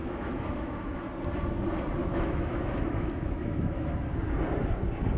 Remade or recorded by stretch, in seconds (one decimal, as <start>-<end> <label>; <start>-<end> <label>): 0.0-1.0 remade; 1.0-2.0 recorded; 2.0-3.9 remade; 3.9-5.2 recorded

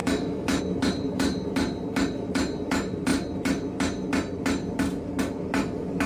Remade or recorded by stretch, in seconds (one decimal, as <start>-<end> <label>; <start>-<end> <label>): 0.0-0.6 remade; 0.6-6.1 recorded

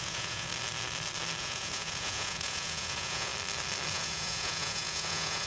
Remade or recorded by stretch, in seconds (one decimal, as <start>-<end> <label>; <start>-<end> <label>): 0.0-0.5 remade; 0.5-1.4 recorded; 1.4-3.3 remade; 3.3-3.9 recorded; 3.9-5.5 remade

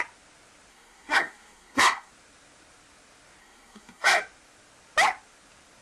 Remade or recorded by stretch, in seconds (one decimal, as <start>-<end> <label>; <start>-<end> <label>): 0.0-0.7 recorded; 0.7-2.1 remade; 2.1-3.4 recorded; 3.4-4.2 remade; 4.2-5.8 recorded

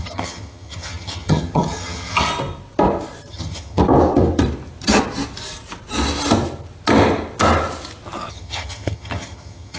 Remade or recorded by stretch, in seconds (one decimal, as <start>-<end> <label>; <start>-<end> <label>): 0.0-2.3 remade; 2.3-3.3 recorded; 3.3-3.8 remade; 3.8-8.3 recorded; 8.3-9.8 remade

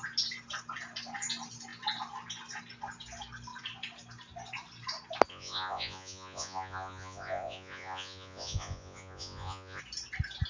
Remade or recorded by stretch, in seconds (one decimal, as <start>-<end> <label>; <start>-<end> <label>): 0.0-5.3 recorded; 5.3-9.8 remade; 9.8-10.5 recorded

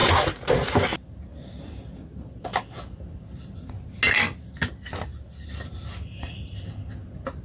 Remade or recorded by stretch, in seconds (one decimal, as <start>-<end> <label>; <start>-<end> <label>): 0.0-7.4 recorded

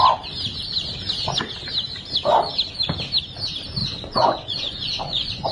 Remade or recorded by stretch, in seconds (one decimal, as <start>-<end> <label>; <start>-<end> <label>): 0.0-3.8 recorded; 3.8-5.5 remade